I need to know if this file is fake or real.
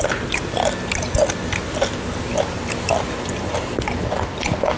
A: real